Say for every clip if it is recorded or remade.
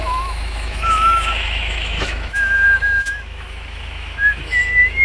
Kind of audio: remade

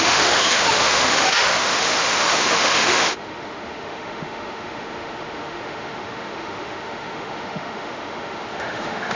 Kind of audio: remade